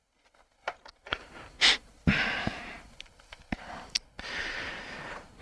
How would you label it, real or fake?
real